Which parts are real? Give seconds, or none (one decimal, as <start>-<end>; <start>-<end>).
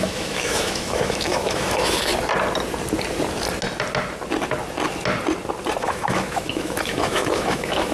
2.1-5.8